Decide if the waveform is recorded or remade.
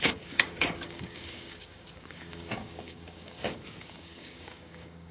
remade